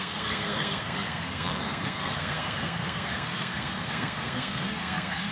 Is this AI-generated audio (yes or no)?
yes